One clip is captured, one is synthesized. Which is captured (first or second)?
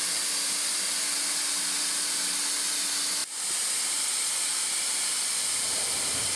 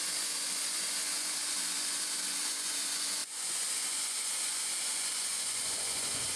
first